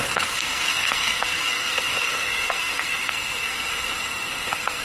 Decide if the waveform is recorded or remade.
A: remade